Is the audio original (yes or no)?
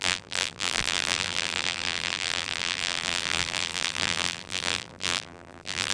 no